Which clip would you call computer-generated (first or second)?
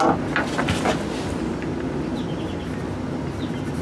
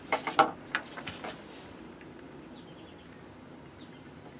second